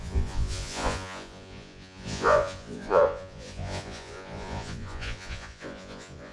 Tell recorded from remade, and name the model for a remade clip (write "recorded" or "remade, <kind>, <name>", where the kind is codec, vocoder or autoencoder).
remade, vocoder, Vocos